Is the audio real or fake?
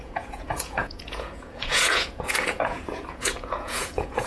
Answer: fake